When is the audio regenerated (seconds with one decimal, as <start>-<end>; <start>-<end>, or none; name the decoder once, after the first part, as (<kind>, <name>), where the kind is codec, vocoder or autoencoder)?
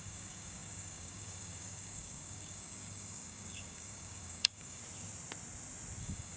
0.0-4.8 (codec, DAC); 6.0-6.4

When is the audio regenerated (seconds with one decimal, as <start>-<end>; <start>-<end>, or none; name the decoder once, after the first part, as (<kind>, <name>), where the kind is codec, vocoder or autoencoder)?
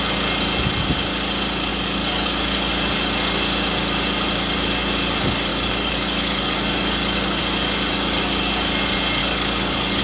1.7-2.7 (codec, DAC); 5.5-7.4; 9.2-10.0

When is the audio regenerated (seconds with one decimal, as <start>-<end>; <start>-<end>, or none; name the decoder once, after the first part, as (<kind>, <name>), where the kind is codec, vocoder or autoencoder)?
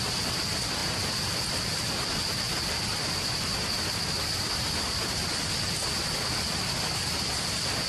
none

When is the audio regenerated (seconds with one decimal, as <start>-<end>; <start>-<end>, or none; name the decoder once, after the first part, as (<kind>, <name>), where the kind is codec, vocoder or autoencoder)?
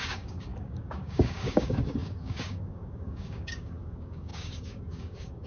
0.0-5.5 (codec, DAC)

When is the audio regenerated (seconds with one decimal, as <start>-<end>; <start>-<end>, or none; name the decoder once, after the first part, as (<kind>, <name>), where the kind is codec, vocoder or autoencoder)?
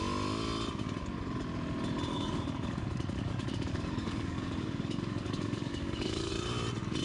2.1-6.3 (codec, DAC)